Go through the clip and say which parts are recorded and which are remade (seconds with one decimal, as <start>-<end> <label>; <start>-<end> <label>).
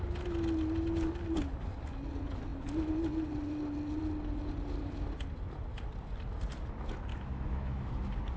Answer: 0.0-7.1 recorded; 7.1-7.9 remade; 7.9-8.4 recorded